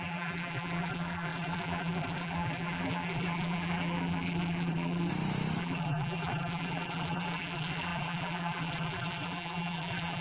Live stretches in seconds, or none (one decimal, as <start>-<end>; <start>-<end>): 5.1-5.6